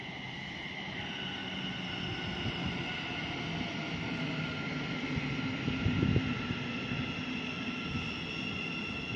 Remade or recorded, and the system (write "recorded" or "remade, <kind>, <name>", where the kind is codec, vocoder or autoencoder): recorded